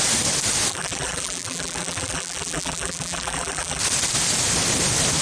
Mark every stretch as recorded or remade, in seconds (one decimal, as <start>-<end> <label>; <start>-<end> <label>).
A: 0.0-0.7 recorded; 0.7-3.8 remade; 3.8-5.2 recorded